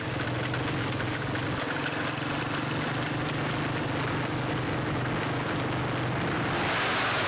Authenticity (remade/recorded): recorded